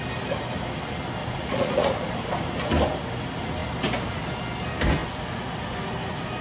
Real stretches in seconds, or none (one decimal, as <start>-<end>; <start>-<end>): 0.0-1.2; 2.1-6.4